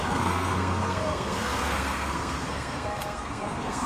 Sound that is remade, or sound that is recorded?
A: remade